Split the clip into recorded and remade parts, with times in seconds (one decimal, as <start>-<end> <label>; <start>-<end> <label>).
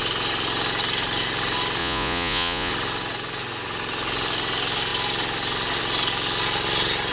0.0-1.8 recorded; 1.8-2.7 remade; 2.7-7.1 recorded